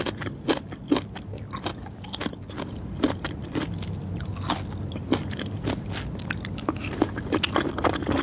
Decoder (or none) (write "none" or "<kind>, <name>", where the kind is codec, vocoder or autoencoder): none